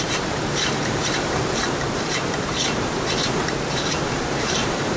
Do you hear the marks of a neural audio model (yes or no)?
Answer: yes